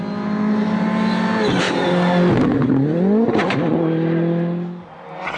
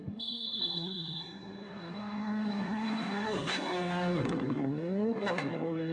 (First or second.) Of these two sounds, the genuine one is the first